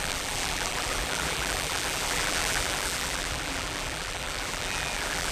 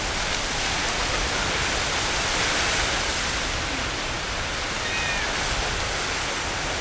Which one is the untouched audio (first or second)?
second